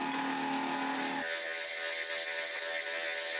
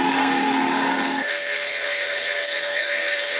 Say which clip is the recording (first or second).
first